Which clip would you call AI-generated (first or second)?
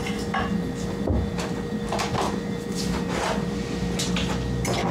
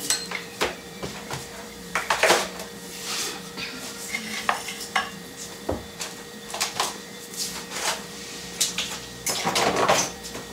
second